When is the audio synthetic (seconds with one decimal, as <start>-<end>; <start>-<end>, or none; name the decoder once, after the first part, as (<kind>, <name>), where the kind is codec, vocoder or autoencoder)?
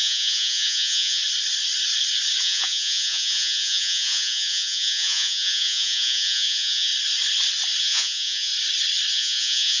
0.0-1.2 (vocoder, Vocos); 2.4-6.9; 7.8-8.5; 9.1-9.8